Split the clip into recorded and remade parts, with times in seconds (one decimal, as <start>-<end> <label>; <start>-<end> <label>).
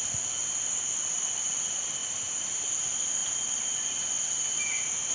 0.0-5.1 recorded